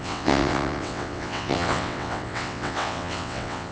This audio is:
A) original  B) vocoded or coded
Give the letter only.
B